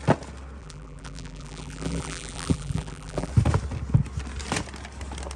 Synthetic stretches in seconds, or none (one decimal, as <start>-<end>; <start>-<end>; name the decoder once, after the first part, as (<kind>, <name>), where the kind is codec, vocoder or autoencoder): 0.6-3.3 (vocoder, BigVGAN v2)